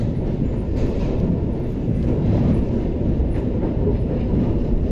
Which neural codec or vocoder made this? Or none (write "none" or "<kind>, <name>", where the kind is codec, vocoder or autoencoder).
vocoder, BigVGAN v2